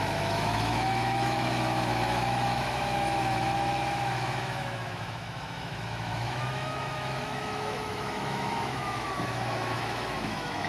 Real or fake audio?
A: fake